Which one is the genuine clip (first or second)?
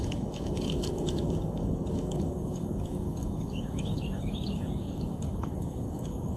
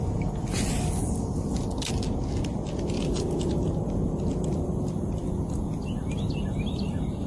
second